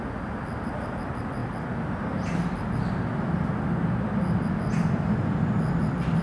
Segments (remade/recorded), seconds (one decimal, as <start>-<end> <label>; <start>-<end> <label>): 0.0-6.2 recorded